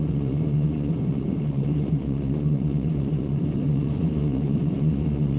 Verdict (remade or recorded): remade